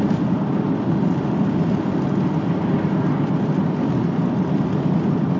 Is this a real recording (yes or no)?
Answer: yes